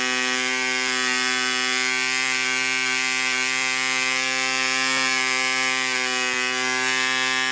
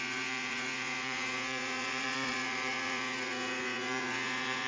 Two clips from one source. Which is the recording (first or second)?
first